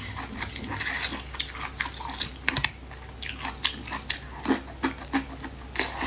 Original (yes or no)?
yes